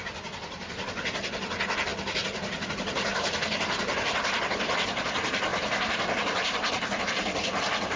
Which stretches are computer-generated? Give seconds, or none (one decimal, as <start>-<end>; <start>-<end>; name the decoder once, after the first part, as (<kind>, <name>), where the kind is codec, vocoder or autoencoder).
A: 3.1-4.4 (vocoder, BigVGAN v2); 5.5-7.0